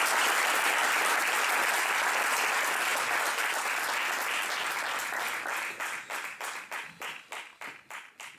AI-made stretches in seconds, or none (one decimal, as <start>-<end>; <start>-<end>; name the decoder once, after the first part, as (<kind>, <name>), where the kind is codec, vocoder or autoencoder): none